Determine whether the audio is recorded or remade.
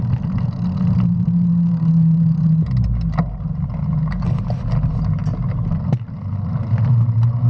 recorded